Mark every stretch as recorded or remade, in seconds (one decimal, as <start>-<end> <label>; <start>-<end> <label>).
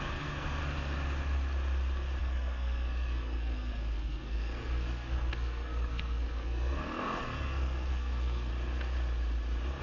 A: 0.0-0.6 remade; 0.6-2.2 recorded; 2.2-8.5 remade; 8.5-9.8 recorded